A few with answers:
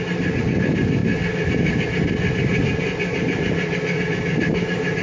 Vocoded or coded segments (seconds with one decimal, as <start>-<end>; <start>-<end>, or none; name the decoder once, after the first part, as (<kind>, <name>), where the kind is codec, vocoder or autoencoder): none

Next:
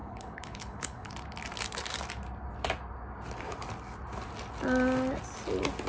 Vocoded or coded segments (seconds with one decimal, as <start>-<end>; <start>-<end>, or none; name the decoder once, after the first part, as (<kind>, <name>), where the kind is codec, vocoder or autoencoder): 0.0-1.1 (codec, HILCodec)

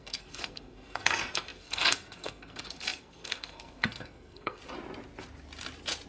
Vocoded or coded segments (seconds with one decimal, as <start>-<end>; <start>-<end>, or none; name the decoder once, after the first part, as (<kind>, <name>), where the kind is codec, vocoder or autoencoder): 0.0-4.6 (codec, SNAC)